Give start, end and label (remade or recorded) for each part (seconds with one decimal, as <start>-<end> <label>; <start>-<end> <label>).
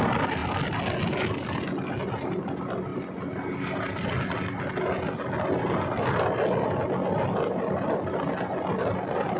0.0-9.4 recorded